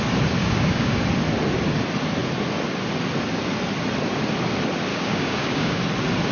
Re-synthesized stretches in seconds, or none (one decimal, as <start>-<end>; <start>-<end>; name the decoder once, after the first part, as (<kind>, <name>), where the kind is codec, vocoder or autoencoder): 0.4-1.0 (codec, DAC); 4.9-5.8